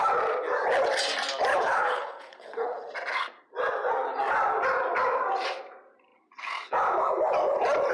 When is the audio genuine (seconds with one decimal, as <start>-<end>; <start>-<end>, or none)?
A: 0.0-1.5; 2.9-7.9